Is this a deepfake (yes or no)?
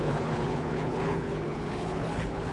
yes